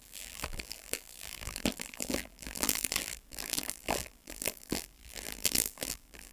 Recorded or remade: remade